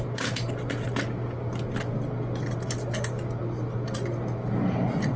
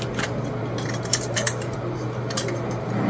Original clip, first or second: first